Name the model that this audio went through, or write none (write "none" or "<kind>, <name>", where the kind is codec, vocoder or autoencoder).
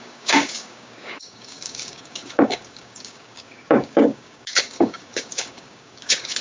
codec, DAC